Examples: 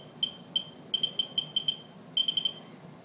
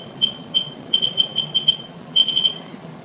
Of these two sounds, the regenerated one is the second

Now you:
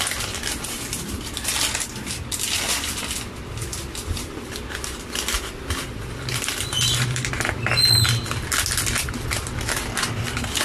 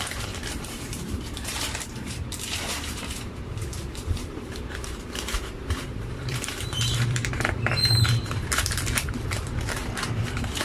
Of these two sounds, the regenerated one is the second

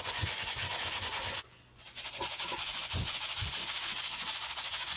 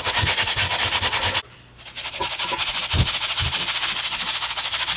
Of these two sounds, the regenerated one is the first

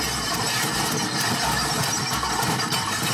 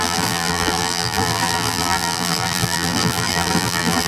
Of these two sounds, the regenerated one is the second